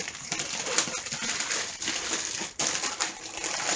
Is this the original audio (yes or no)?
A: yes